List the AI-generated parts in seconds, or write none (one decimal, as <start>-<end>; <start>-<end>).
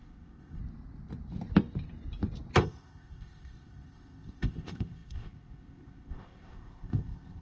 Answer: 0.0-0.6; 2.6-7.4